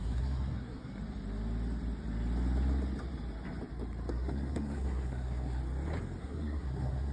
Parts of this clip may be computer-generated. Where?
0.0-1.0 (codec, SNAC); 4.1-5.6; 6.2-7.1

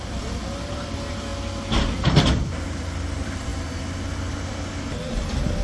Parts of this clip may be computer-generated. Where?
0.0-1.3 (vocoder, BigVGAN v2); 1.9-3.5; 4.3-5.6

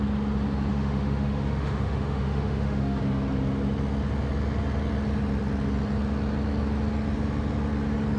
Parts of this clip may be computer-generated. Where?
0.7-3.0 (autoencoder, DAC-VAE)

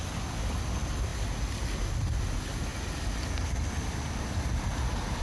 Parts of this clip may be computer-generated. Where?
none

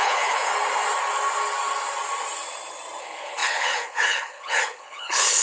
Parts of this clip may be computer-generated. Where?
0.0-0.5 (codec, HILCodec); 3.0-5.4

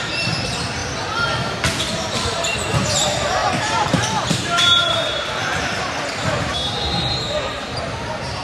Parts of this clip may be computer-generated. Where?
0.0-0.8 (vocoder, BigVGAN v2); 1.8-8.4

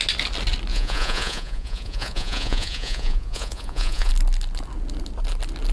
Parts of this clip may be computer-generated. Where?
0.7-4.1 (vocoder, Vocos)

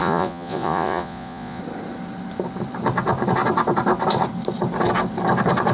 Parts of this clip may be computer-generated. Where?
0.0-1.6 (vocoder, Vocos)